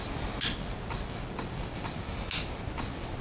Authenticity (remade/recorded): recorded